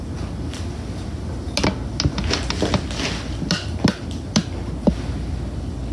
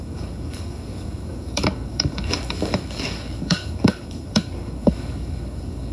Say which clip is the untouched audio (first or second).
first